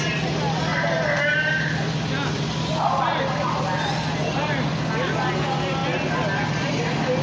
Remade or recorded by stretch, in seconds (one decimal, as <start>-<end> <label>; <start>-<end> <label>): 0.0-7.2 recorded